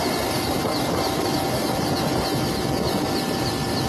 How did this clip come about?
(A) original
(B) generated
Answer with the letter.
A